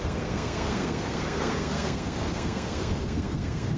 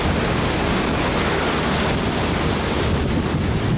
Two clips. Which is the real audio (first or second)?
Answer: second